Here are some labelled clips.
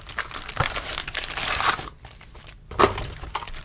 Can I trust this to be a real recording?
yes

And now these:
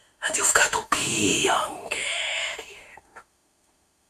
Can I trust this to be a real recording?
no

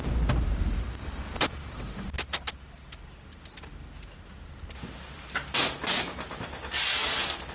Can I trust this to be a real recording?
yes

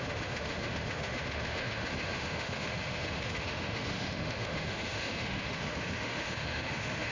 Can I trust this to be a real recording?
no